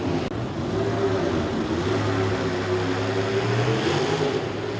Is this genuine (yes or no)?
yes